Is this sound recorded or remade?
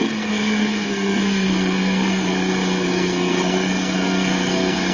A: remade